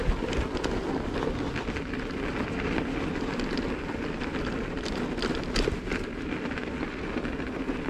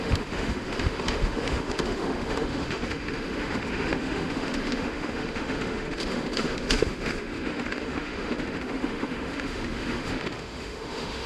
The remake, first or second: second